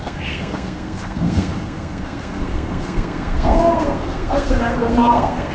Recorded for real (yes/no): no